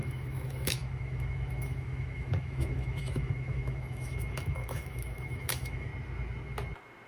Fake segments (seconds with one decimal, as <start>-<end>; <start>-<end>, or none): 0.0-5.9